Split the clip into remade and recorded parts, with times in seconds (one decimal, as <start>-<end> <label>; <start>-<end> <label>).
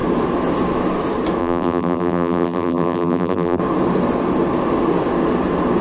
0.0-1.4 recorded; 1.4-3.6 remade; 3.6-5.8 recorded